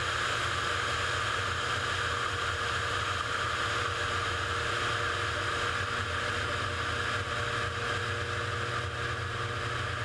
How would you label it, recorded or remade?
recorded